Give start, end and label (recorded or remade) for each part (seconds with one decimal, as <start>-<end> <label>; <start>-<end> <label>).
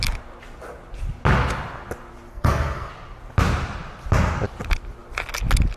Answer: 0.0-2.3 recorded; 2.3-2.9 remade; 2.9-5.8 recorded